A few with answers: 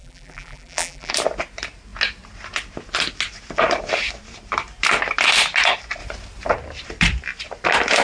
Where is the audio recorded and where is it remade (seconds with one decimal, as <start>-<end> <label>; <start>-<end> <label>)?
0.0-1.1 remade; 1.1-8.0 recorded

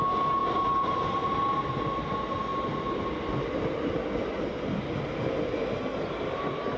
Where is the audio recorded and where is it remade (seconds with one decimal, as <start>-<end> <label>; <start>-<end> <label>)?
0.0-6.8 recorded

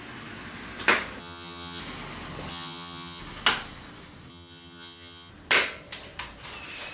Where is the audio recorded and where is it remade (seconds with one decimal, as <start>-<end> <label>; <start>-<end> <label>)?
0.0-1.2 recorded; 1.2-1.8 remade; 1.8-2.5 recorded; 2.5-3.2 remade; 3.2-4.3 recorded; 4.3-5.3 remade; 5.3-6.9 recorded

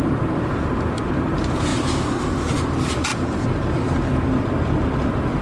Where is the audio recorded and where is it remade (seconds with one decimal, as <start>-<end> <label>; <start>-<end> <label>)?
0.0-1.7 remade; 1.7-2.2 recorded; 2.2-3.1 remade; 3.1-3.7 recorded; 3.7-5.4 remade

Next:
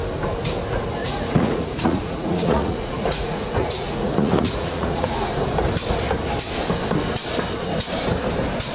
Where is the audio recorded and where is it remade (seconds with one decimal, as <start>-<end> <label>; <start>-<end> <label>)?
0.0-1.0 recorded; 1.0-5.3 remade; 5.3-8.7 recorded